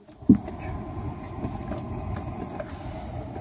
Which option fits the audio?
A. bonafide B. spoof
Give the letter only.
A